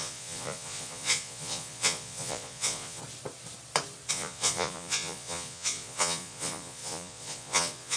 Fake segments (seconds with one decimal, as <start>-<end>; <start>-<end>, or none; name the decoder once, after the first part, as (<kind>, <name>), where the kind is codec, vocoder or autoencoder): 0.0-3.0 (vocoder, Vocos); 4.1-8.0